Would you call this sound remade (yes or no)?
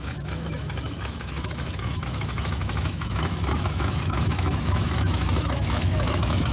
yes